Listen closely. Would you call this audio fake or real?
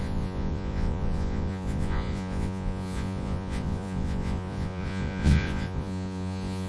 fake